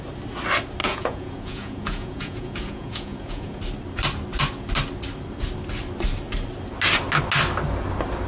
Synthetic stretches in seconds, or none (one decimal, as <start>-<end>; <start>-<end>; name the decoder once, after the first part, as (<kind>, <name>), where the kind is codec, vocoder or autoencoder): 0.8-3.6 (vocoder, Vocos)